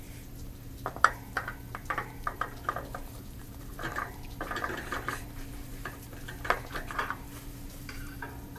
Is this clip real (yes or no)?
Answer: no